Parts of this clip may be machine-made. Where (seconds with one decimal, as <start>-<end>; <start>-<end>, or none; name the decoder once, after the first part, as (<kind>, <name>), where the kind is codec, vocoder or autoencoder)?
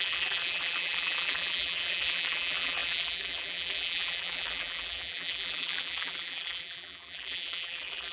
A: 0.0-8.1 (vocoder, BigVGAN v2)